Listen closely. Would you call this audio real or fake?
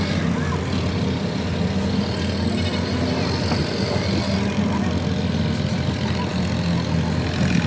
real